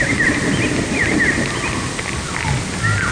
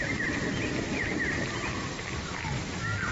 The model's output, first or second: second